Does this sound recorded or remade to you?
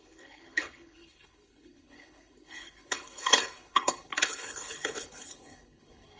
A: remade